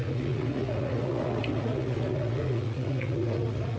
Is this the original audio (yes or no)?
no